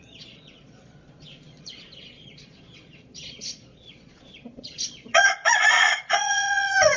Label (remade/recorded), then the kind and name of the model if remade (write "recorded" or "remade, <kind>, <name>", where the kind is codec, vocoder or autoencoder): remade, vocoder, Vocos